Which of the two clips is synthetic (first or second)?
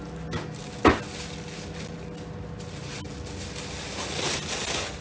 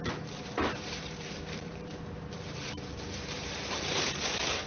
second